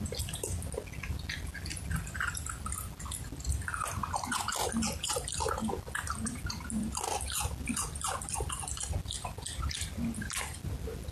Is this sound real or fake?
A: real